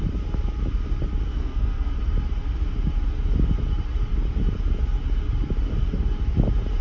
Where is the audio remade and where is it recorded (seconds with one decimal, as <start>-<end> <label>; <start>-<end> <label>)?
0.0-1.3 recorded; 1.3-1.9 remade; 1.9-6.8 recorded